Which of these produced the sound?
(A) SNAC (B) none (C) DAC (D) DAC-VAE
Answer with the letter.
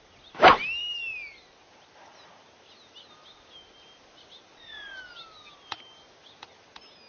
B